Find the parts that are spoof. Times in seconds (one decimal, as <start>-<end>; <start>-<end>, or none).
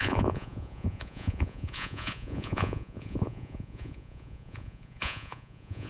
0.0-5.9